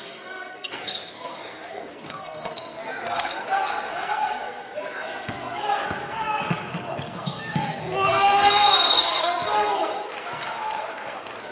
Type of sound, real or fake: fake